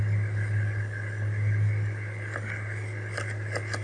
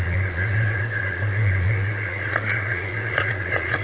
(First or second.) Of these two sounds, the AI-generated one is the second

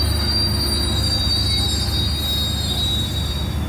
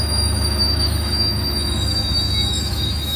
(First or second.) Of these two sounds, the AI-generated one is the second